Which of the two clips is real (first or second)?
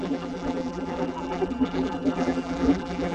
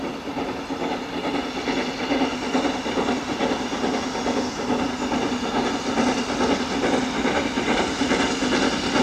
second